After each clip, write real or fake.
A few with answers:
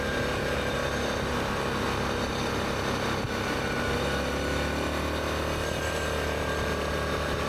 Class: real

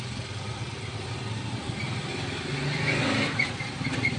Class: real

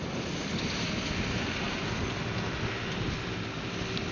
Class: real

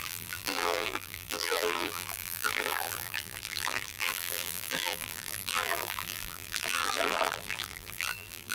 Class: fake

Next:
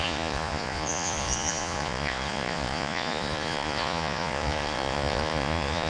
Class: fake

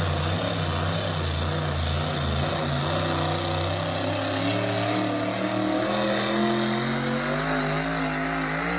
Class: real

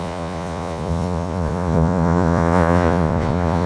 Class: fake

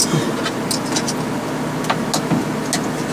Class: real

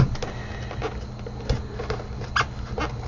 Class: real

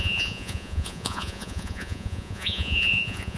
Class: fake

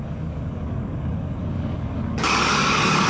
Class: fake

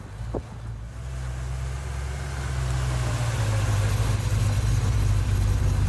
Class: real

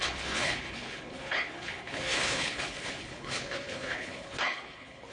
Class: fake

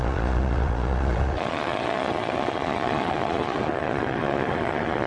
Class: fake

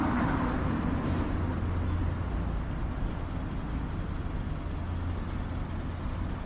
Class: real